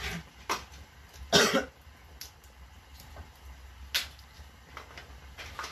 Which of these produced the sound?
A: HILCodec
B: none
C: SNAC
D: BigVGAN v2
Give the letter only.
B